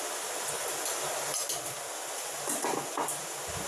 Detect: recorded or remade recorded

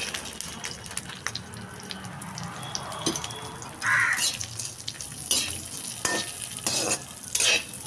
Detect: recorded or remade recorded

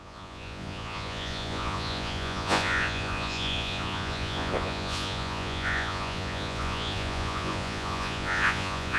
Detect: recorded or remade remade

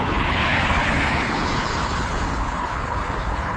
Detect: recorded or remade remade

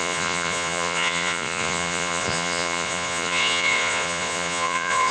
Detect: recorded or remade remade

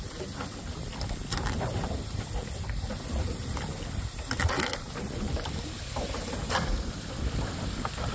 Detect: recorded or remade remade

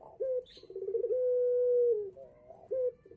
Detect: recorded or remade recorded